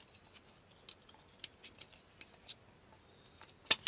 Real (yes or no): yes